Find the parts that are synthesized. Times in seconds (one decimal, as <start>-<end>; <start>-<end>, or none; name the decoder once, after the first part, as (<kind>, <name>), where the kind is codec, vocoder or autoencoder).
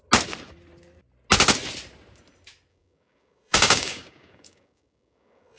2.7-5.6 (codec, DAC)